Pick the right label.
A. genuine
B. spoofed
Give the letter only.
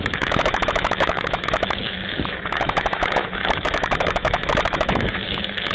B